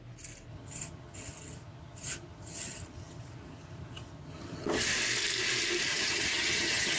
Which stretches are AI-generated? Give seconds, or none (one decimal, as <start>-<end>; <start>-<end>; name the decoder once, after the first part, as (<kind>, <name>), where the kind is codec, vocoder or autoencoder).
0.5-4.7 (vocoder, HiFi-GAN); 5.9-7.0